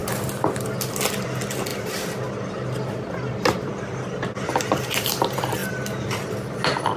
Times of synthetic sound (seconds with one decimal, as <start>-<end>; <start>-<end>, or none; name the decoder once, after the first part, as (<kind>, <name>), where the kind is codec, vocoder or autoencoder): none